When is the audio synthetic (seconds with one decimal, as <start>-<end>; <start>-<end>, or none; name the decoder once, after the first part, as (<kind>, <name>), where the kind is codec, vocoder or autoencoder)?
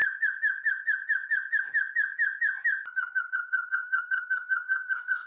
3.2-5.3 (codec, SNAC)